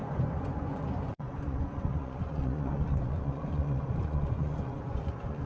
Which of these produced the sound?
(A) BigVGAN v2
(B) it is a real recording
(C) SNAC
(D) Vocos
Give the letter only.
D